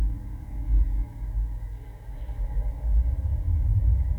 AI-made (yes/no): yes